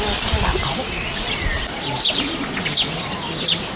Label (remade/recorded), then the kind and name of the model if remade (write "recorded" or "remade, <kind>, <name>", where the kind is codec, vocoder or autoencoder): recorded